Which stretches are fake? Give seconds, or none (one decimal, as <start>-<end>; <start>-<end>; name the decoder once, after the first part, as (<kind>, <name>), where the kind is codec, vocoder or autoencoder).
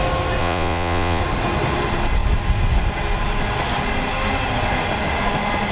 0.4-1.2 (vocoder, Vocos)